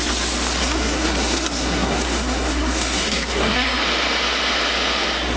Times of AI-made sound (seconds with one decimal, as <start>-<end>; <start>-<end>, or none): 0.6-3.8